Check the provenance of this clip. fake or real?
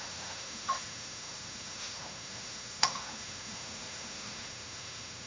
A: fake